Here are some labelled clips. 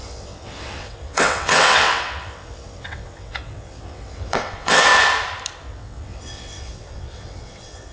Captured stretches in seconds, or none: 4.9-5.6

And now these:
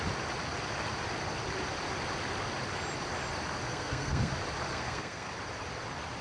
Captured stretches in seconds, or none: 0.0-3.7; 4.3-4.7; 5.3-6.2

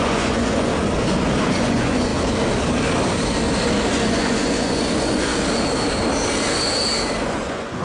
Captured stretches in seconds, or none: 0.7-1.4; 2.1-3.9; 5.3-7.2

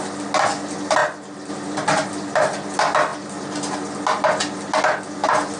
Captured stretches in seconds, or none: 0.0-5.6